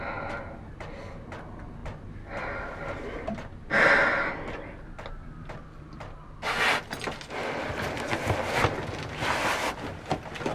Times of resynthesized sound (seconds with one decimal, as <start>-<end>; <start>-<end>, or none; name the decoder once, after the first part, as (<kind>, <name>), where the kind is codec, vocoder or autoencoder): none